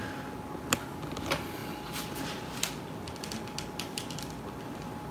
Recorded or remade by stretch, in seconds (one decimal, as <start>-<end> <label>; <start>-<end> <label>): 0.0-5.1 recorded